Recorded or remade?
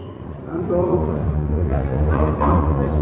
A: remade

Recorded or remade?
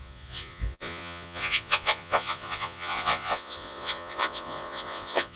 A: remade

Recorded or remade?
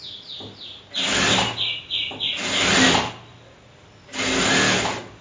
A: recorded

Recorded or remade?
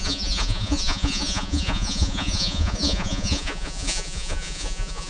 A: remade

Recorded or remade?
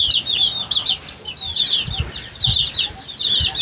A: recorded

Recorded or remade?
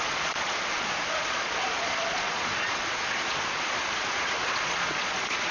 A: remade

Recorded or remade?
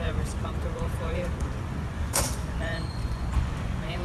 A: remade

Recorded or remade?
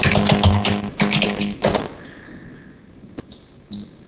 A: recorded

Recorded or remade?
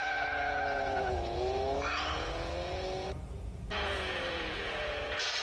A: remade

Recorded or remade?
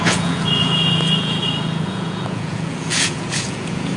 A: remade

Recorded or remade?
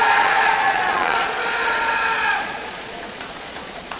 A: remade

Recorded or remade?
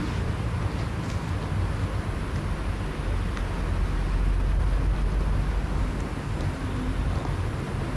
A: recorded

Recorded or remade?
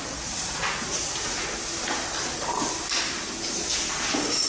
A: recorded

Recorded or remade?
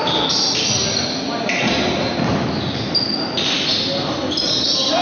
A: recorded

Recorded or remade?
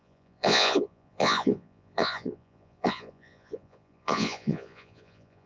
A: remade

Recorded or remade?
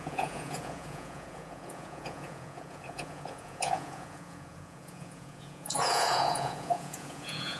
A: remade